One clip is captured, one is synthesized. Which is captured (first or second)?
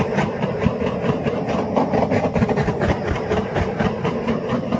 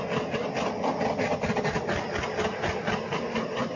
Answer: second